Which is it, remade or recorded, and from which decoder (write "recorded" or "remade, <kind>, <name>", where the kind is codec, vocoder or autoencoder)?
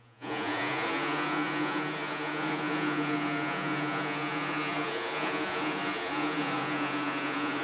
remade, vocoder, Vocos